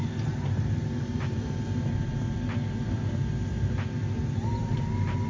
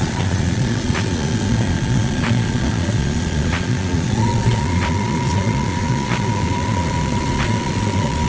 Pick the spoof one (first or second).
second